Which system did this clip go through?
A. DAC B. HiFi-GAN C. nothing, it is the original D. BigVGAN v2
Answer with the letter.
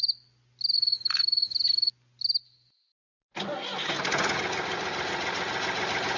C